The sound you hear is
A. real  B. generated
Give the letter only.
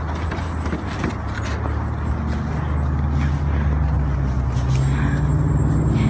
A